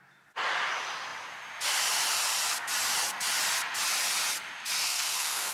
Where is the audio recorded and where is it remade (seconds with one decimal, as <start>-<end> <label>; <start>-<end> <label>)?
0.0-4.8 recorded; 4.8-5.5 remade